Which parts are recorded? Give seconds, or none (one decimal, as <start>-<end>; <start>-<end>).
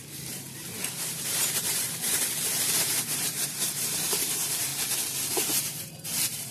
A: 4.7-5.3